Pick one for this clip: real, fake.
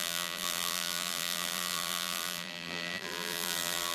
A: fake